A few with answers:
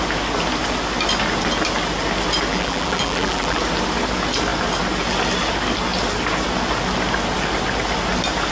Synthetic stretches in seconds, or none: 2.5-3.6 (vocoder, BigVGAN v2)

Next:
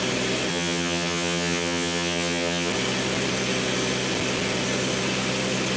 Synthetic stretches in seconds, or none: 0.5-2.7 (vocoder, HiFi-GAN)

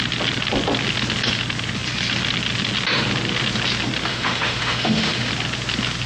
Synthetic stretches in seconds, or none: 4.1-5.3 (autoencoder, DAC-VAE)

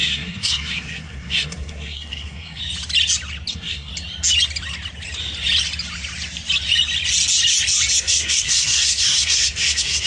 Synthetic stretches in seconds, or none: 0.0-2.6 (codec, SNAC); 3.5-3.9; 8.0-10.1

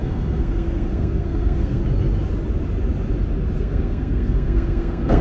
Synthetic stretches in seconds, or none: 0.0-1.8 (codec, SNAC); 3.6-5.2